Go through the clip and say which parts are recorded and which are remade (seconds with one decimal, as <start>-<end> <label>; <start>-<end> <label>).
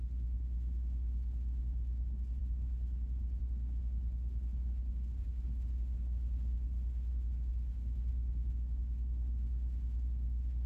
0.0-2.4 recorded; 2.4-3.4 remade; 3.4-10.7 recorded